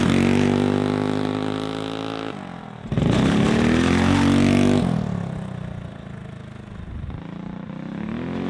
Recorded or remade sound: recorded